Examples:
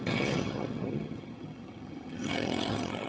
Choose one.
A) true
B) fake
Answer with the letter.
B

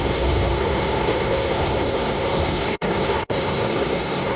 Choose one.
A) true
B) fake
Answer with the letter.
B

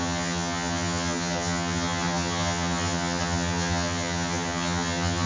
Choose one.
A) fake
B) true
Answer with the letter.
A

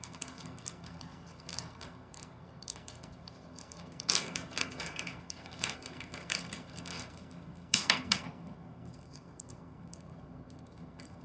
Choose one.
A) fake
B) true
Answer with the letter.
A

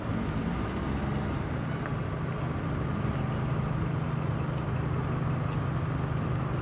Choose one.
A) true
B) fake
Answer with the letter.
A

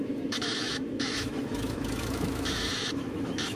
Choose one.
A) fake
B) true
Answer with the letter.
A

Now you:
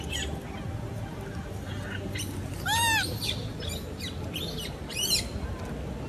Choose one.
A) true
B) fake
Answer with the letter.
A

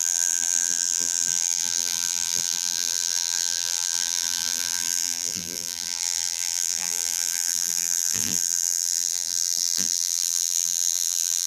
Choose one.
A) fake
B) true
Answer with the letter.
A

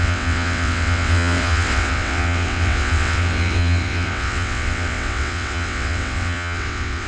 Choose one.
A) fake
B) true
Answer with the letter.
A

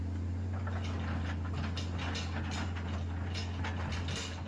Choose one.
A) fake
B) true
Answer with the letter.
B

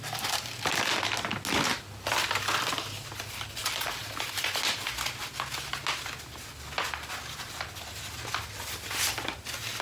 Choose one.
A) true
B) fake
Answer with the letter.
A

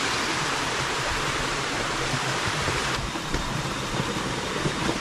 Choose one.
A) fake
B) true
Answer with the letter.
A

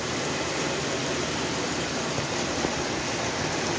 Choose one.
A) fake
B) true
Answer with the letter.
B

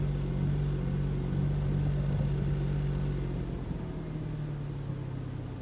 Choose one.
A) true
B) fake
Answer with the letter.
A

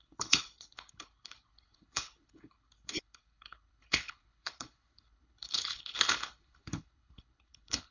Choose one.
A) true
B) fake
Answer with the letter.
B